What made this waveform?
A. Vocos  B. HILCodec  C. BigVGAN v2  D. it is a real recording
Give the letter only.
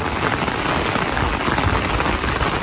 D